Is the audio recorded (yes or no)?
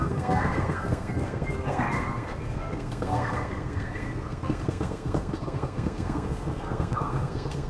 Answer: no